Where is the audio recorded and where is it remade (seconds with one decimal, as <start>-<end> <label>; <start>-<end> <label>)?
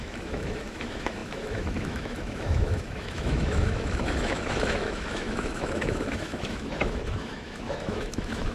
0.0-8.5 remade